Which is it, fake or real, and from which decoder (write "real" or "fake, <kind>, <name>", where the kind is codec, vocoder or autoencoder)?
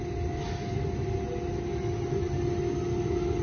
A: real